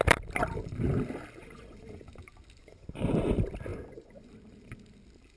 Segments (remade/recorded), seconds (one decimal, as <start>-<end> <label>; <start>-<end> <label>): 0.0-1.4 recorded; 1.4-2.0 remade; 2.0-2.6 recorded; 2.6-3.3 remade; 3.3-3.7 recorded; 3.7-4.3 remade; 4.3-5.4 recorded